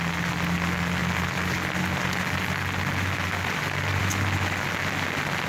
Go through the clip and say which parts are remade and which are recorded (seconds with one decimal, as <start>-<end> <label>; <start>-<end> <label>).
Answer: 0.0-5.5 recorded